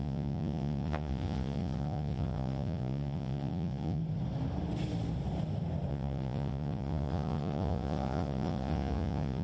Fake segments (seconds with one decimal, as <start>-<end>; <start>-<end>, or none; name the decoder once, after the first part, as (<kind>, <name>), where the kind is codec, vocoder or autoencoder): 0.0-4.0 (vocoder, Vocos); 5.9-9.4